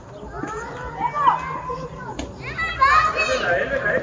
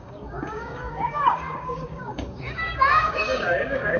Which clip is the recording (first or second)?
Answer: first